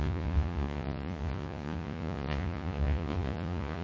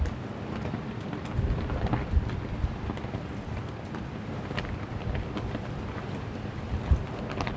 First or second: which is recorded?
second